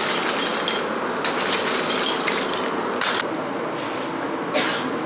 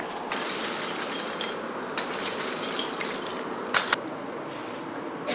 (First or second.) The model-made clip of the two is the second